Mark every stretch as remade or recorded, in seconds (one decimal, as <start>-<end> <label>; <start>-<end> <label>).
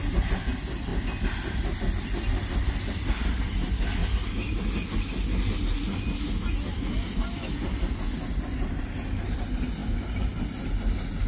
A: 0.0-11.3 recorded